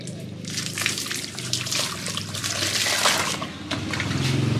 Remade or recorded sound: recorded